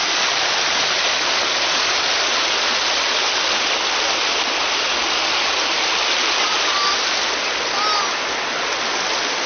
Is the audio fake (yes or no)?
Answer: no